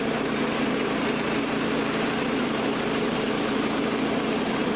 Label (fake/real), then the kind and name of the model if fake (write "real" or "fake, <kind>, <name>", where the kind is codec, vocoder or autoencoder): fake, vocoder, BigVGAN v2